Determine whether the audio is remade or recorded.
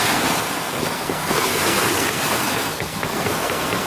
remade